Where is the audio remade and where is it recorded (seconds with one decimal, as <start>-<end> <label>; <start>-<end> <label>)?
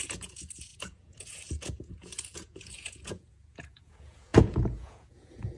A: 0.0-5.6 remade